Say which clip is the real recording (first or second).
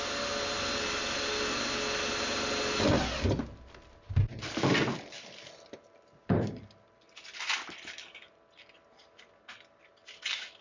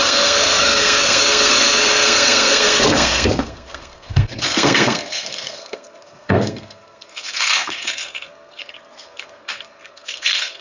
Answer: first